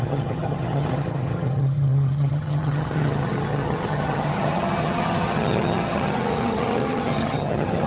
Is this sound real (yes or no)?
no